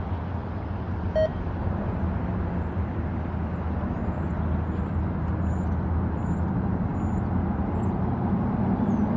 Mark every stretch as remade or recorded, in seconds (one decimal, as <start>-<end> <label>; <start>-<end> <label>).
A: 0.0-9.2 recorded